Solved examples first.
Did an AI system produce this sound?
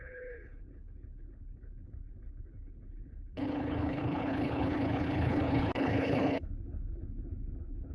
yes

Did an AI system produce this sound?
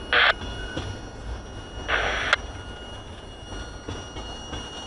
no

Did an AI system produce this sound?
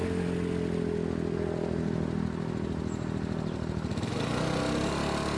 no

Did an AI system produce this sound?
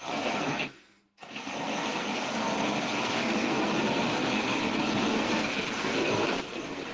yes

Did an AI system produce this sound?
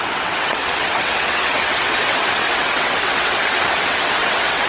yes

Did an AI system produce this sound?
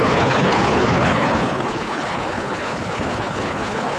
yes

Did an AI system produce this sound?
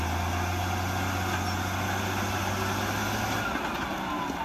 no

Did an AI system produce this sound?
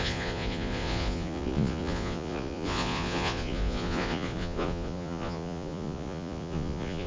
yes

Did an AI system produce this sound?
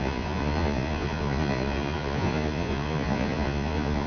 yes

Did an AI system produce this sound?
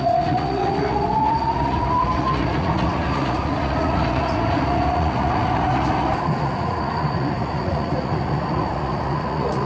yes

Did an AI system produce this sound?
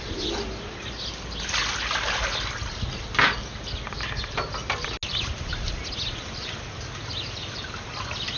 no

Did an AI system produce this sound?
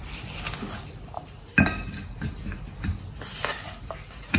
no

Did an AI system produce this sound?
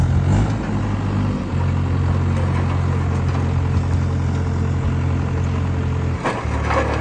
no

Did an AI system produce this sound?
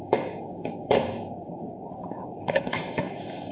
yes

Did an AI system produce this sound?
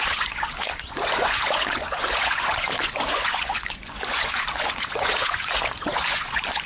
yes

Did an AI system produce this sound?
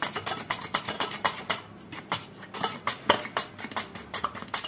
no